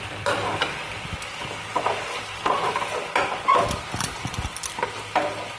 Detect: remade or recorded recorded